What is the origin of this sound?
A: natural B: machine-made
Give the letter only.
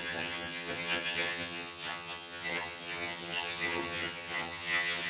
B